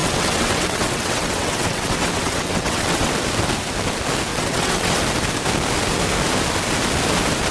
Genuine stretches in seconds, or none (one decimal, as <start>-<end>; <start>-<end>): 3.1-4.3; 5.0-7.5